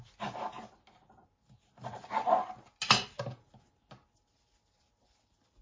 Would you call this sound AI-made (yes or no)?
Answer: no